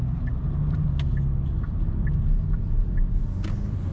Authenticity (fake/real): real